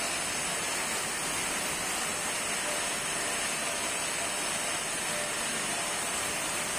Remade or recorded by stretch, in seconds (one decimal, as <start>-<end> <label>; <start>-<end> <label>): 0.0-6.8 recorded